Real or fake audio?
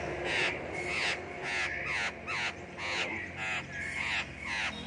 real